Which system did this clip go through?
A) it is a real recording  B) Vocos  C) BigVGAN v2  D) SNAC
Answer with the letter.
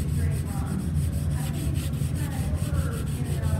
A